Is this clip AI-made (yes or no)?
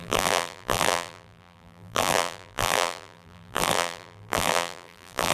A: yes